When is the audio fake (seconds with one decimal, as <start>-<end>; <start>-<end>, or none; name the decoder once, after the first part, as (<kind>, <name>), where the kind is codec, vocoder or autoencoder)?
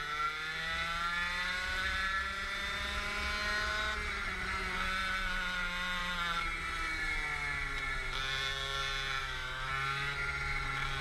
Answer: 9.2-9.7 (autoencoder, DAC-VAE)